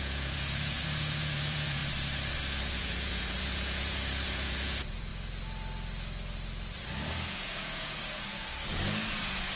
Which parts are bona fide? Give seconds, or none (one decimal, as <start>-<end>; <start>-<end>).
1.8-2.6; 5.1-7.3; 8.5-9.1